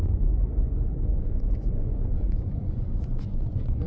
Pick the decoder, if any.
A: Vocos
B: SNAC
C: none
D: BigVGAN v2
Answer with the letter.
A